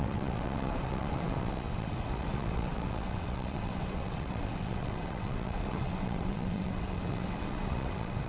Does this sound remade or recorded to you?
remade